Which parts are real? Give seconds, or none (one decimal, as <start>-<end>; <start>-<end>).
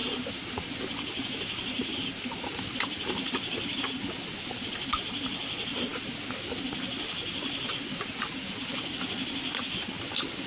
0.0-10.5